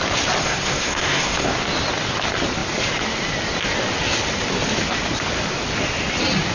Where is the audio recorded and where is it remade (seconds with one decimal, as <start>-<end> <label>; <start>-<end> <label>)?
0.0-0.4 recorded; 0.4-1.5 remade; 1.5-6.5 recorded